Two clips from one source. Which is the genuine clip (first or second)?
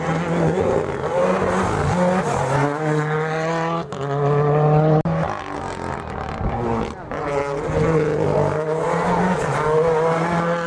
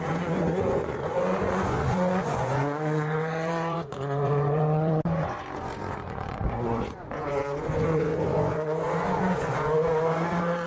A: first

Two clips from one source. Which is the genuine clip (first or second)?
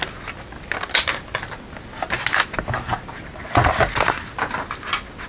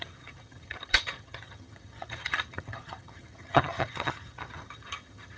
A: first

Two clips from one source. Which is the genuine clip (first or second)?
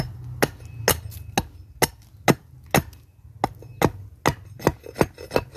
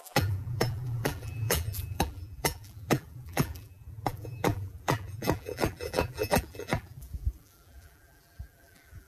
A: first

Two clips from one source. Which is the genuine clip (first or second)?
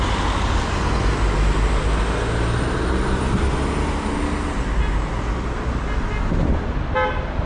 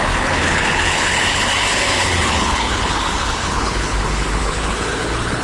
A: first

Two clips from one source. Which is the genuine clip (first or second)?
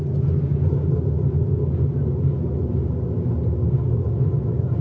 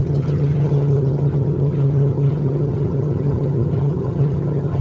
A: first